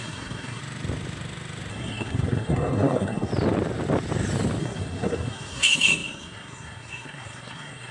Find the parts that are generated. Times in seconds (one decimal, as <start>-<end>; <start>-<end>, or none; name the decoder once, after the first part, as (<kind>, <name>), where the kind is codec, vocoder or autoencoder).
0.0-0.6 (codec, SNAC); 1.7-3.3; 4.6-7.9